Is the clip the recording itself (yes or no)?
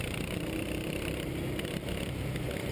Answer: no